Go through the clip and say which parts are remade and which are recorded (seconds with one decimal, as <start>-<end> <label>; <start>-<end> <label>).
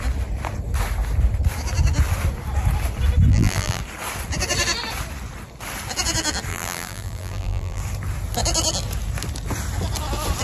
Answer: 0.0-3.3 recorded; 3.3-3.8 remade; 3.8-6.5 recorded; 6.5-7.8 remade; 7.8-10.4 recorded